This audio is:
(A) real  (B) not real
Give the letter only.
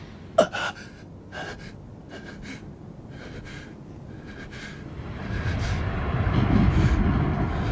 A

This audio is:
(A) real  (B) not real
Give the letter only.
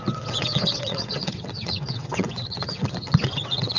B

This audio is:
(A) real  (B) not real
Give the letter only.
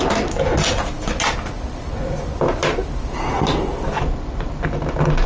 A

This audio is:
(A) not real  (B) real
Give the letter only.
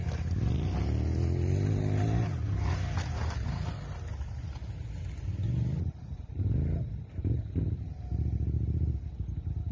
B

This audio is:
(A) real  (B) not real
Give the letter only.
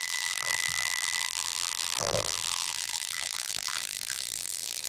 B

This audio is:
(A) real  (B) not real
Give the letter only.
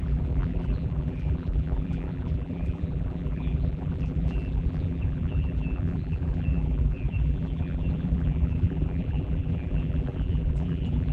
B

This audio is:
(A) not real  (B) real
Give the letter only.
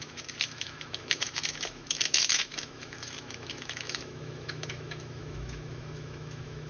A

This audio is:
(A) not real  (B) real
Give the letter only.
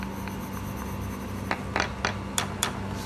B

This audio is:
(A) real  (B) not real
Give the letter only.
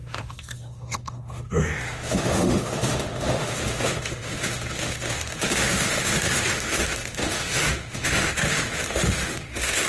B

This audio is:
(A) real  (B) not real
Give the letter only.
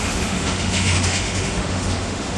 B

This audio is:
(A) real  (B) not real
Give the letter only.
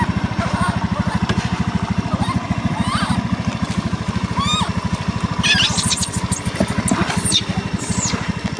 A